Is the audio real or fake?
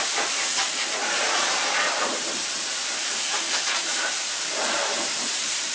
fake